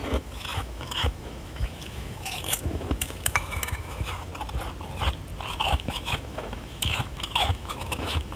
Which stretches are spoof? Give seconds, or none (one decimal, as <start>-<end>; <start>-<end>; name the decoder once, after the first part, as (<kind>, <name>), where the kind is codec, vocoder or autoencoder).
0.0-4.3 (autoencoder, DAC-VAE); 5.5-8.4